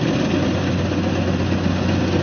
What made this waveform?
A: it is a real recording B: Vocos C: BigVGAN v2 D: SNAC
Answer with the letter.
A